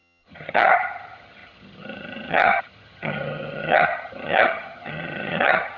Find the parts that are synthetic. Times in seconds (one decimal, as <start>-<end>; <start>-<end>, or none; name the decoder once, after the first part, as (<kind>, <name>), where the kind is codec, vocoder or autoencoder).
0.0-5.8 (vocoder, HiFi-GAN)